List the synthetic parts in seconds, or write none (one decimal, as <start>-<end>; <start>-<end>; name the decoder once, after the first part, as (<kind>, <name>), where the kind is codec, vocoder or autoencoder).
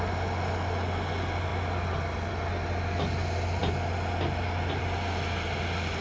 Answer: none